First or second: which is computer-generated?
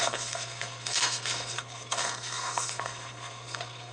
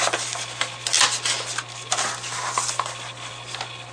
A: first